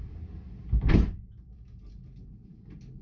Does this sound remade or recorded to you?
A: recorded